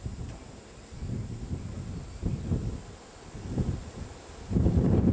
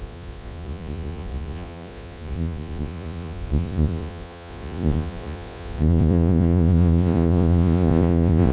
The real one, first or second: first